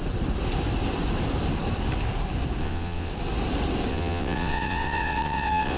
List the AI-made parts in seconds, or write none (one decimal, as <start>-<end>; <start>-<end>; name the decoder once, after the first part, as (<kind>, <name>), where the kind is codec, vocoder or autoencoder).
2.6-3.1 (vocoder, WaveNeXt); 3.9-5.8